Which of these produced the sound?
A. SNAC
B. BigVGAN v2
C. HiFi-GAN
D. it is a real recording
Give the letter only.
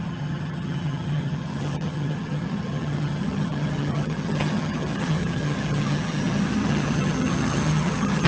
C